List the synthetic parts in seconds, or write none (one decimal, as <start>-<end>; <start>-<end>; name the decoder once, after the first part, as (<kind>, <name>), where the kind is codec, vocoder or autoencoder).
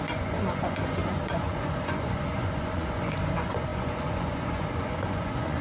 0.0-5.6 (vocoder, Vocos)